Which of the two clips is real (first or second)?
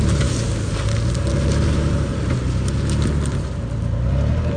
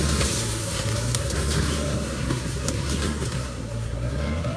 first